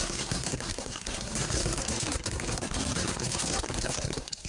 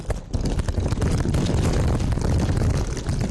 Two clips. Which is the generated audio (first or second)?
first